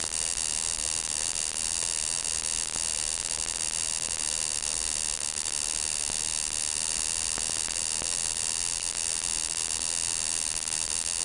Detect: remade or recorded recorded